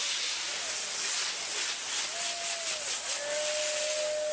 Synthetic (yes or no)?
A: no